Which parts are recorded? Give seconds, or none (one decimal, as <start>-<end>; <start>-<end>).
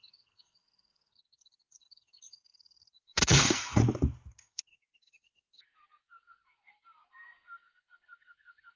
3.8-4.4